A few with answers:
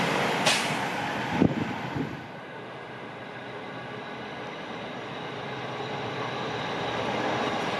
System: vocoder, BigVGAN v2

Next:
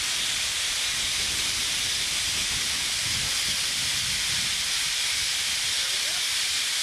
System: none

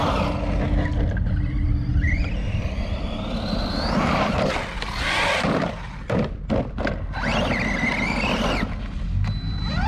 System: none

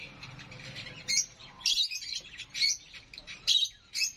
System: vocoder, BigVGAN v2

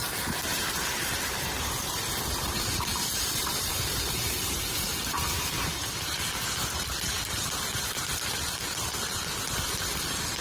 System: vocoder, BigVGAN v2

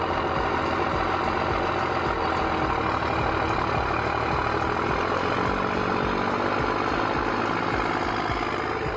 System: none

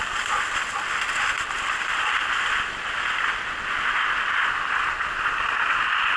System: none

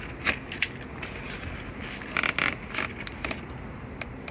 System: none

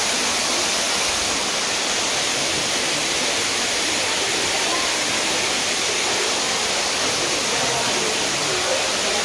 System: vocoder, BigVGAN v2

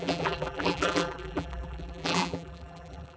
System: vocoder, BigVGAN v2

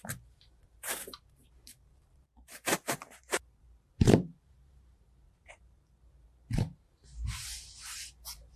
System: vocoder, BigVGAN v2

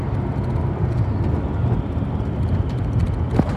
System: none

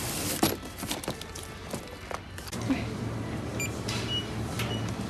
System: none